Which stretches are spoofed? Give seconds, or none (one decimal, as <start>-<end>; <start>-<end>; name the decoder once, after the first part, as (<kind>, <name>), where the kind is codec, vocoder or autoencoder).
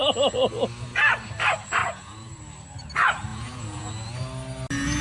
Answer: 1.8-2.4 (vocoder, Vocos); 3.3-3.9